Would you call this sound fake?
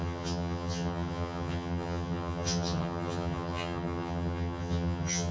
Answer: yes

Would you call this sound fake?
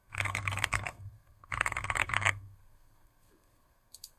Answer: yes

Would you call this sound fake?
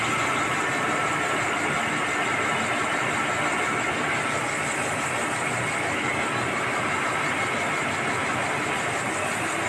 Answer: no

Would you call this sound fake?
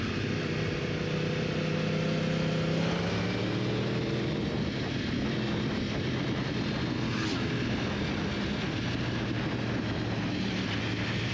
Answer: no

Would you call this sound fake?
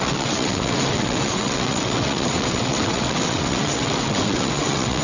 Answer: yes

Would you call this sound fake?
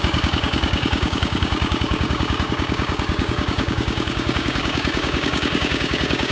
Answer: yes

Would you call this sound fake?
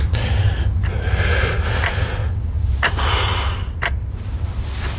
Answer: no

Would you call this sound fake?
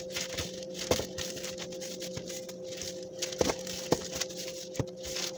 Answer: no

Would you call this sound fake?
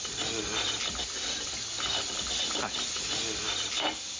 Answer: no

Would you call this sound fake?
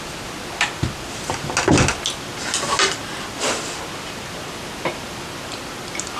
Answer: no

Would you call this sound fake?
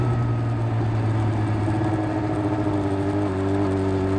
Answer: no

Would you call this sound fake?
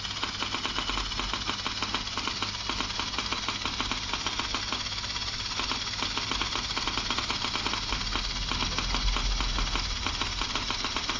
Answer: no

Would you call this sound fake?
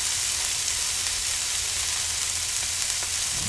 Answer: no